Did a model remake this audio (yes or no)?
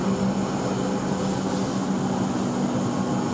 no